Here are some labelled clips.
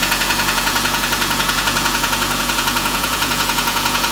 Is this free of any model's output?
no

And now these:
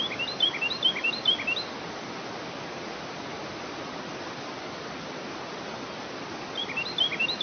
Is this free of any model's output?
yes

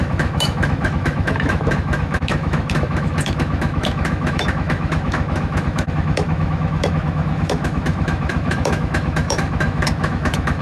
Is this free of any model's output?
no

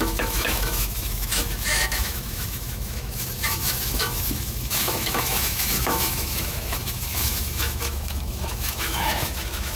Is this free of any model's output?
no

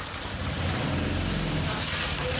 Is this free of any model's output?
no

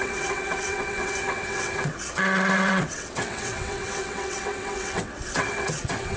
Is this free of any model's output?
no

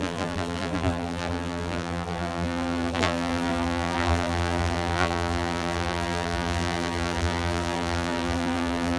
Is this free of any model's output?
no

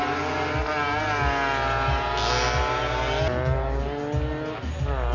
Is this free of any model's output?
yes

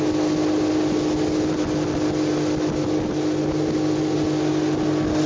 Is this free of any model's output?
yes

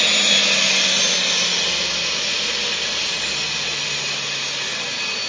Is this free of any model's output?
yes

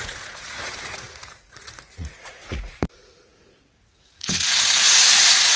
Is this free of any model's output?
no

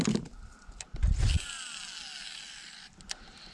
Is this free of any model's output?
yes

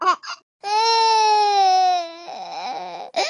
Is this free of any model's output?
yes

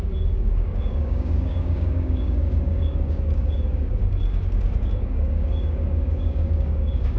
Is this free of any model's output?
no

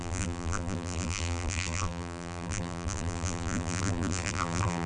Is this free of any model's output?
no